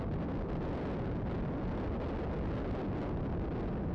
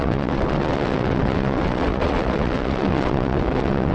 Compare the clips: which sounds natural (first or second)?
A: first